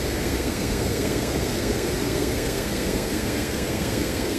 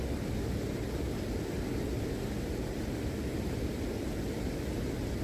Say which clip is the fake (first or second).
first